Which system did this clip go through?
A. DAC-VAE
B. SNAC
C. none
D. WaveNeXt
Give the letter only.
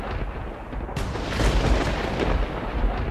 C